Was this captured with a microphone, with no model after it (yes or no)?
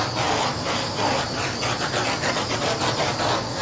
yes